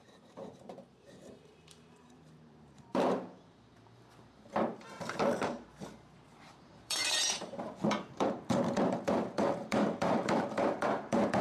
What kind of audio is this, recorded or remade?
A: remade